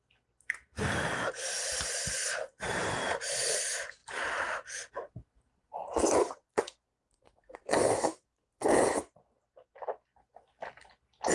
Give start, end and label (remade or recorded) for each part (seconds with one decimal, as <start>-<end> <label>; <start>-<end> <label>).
0.0-6.2 recorded; 6.2-8.7 remade; 8.7-11.3 recorded